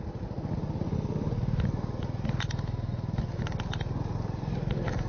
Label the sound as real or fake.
real